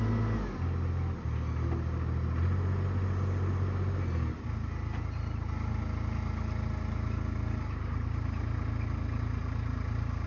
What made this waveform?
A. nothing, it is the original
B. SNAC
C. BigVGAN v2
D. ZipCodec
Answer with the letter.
A